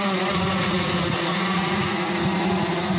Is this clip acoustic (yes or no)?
no